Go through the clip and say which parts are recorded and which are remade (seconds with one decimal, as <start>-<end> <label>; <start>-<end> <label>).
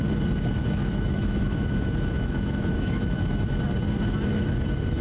0.0-0.6 recorded; 0.6-3.6 remade; 3.6-5.0 recorded